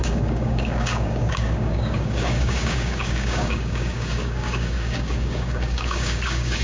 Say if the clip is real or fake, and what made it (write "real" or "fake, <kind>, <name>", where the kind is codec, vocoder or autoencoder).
fake, codec, DAC